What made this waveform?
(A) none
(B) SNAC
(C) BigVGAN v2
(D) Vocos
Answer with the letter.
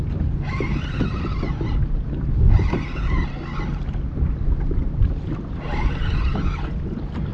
A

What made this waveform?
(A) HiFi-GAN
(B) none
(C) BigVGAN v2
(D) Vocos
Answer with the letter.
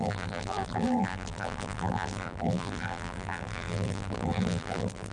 C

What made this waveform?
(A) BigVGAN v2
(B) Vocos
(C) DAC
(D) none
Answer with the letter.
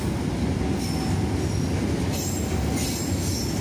D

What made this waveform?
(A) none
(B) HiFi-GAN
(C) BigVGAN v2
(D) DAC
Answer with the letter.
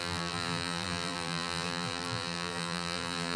C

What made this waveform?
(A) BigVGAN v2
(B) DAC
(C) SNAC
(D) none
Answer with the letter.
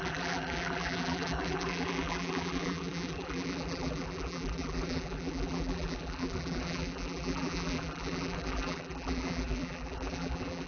A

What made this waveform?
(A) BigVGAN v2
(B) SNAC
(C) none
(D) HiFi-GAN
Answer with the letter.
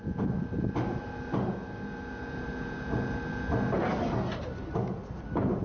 C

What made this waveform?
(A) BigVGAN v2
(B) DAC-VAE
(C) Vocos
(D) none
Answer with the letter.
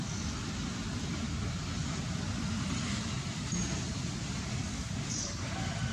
A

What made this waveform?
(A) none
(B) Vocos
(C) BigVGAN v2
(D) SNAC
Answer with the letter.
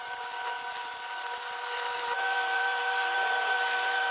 C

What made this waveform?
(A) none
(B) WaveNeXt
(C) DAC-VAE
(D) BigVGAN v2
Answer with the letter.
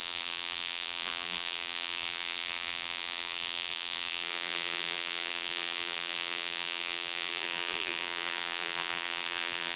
D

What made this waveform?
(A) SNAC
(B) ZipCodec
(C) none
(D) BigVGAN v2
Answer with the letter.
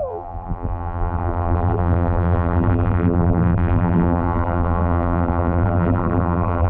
D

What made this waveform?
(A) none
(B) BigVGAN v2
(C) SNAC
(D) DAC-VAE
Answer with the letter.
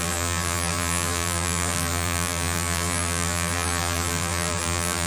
B